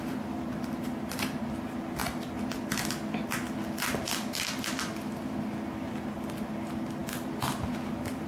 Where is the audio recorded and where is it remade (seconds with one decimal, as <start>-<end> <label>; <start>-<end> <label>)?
0.0-8.3 recorded